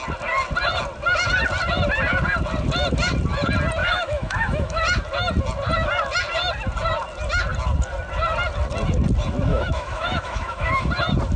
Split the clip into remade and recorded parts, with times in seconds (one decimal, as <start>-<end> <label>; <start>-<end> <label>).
0.0-3.8 recorded; 3.8-4.8 remade; 4.8-9.5 recorded; 9.5-10.9 remade; 10.9-11.4 recorded